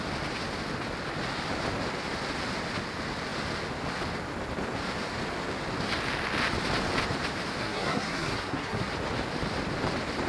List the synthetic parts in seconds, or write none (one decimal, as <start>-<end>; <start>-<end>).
7.6-8.9